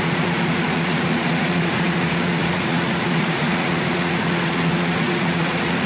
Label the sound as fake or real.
fake